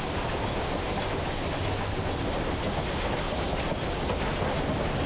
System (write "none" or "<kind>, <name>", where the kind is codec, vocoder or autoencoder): none